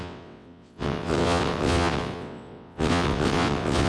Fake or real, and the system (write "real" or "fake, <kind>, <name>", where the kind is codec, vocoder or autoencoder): fake, vocoder, WaveNeXt